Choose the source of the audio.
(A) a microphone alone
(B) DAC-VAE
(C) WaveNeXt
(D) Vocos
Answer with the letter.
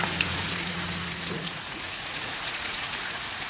D